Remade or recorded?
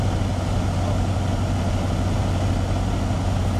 recorded